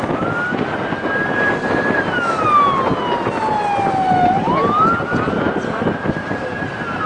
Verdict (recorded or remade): recorded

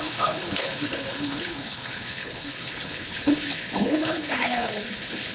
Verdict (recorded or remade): remade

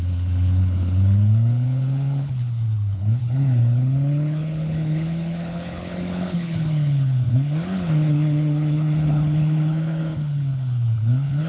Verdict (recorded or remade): remade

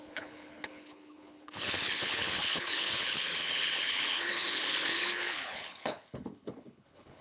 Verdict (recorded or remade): remade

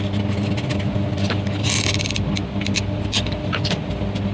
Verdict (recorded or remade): recorded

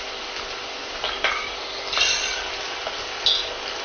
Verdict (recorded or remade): recorded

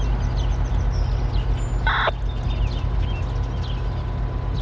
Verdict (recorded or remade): recorded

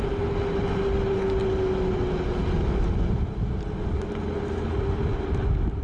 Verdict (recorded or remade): recorded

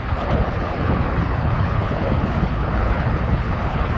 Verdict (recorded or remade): remade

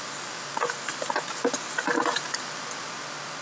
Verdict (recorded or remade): recorded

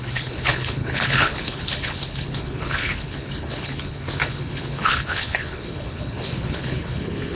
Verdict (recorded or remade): remade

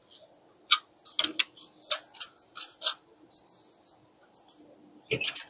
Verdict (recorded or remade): recorded